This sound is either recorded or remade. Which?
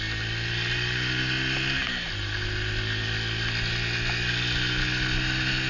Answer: recorded